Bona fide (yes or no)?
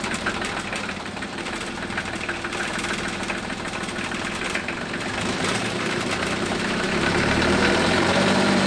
no